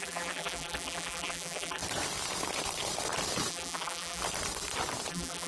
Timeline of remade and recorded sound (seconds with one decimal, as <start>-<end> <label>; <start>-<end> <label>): 0.0-1.8 remade; 1.8-3.5 recorded; 3.5-4.2 remade; 4.2-5.1 recorded; 5.1-5.5 remade